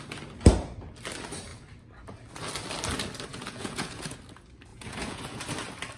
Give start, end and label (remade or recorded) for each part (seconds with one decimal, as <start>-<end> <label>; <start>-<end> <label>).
0.0-3.3 recorded; 3.3-4.2 remade; 4.2-4.7 recorded; 4.7-5.4 remade; 5.4-6.0 recorded